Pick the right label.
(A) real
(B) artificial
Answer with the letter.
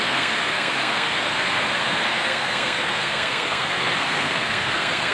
B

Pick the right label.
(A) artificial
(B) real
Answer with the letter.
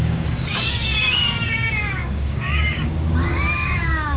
A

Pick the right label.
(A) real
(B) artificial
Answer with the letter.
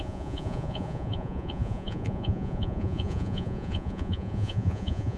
B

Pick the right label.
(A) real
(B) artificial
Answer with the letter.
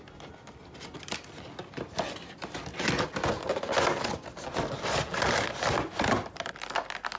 A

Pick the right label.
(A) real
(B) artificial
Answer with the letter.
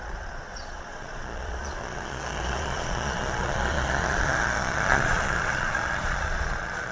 B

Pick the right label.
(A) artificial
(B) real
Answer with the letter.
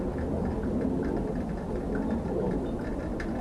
B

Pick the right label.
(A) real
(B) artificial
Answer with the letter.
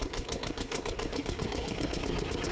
B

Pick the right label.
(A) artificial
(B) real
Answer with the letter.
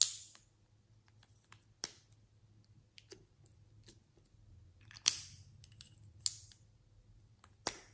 B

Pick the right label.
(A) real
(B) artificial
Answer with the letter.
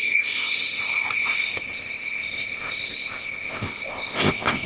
B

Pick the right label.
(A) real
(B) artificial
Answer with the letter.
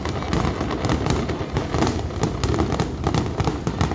A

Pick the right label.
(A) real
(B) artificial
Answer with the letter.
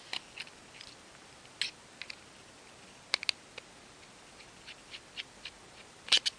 A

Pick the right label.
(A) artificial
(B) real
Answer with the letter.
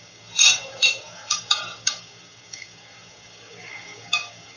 A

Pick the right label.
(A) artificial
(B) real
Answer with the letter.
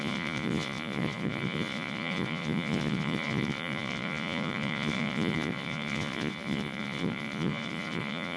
A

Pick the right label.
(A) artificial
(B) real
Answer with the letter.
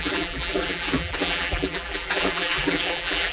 A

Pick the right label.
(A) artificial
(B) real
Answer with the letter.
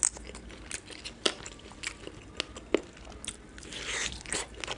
B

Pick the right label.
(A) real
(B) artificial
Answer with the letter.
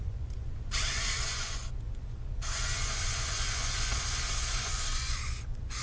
B